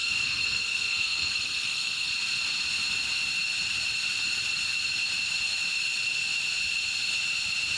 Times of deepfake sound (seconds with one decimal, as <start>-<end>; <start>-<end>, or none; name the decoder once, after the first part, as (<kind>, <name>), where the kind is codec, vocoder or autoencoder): 0.0-2.1 (codec, SNAC)